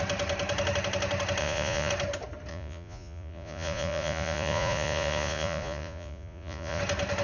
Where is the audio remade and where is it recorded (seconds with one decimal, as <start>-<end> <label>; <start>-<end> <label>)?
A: 0.0-1.4 recorded; 1.4-1.9 remade; 1.9-2.5 recorded; 2.5-6.8 remade; 6.8-7.2 recorded